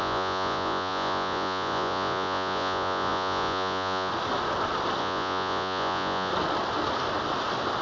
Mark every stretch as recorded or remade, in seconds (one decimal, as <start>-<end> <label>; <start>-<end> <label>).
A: 0.0-4.1 remade; 4.1-5.0 recorded; 5.0-6.3 remade; 6.3-7.8 recorded